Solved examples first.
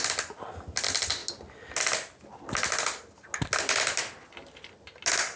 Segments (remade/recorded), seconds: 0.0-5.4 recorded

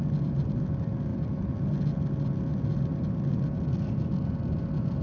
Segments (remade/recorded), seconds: 0.0-5.0 recorded

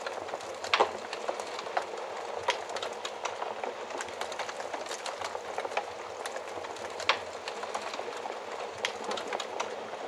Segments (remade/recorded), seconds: 0.0-10.1 recorded